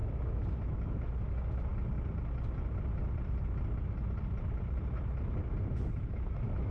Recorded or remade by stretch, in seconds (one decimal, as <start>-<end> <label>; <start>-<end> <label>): 0.0-1.7 remade; 1.7-5.7 recorded; 5.7-6.7 remade